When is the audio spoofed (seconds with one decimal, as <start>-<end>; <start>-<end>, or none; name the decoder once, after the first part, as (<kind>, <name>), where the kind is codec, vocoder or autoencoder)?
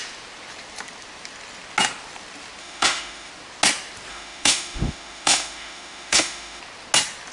2.6-3.3 (autoencoder, DAC-VAE); 4.1-6.6